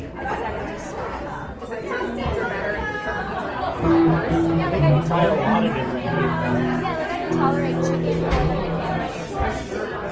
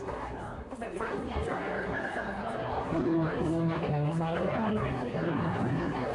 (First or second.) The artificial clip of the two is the second